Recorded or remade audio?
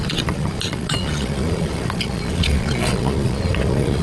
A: remade